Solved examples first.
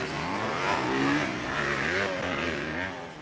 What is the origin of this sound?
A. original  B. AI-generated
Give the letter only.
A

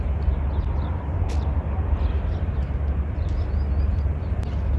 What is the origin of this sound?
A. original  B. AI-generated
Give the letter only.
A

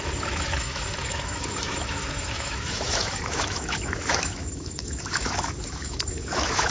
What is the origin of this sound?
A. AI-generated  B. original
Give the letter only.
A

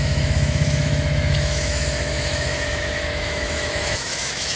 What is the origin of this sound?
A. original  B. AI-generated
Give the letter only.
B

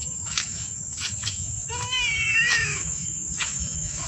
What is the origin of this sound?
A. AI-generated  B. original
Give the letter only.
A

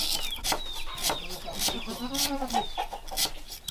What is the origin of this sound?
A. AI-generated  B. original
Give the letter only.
B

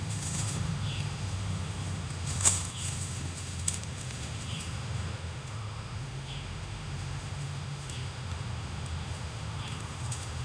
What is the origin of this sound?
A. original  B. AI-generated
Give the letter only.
B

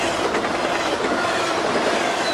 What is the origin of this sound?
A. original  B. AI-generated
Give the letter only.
A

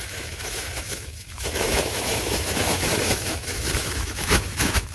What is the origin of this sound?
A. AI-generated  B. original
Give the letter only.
A